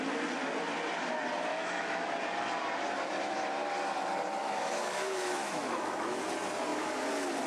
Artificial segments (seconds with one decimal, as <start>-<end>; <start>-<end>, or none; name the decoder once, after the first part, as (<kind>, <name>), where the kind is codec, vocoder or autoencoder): 1.5-2.0 (autoencoder, DAC-VAE); 4.4-6.2